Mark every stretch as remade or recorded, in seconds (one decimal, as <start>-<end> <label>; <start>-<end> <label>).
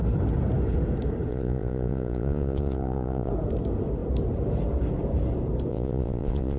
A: 0.0-1.3 recorded; 1.3-3.3 remade; 3.3-5.7 recorded; 5.7-6.6 remade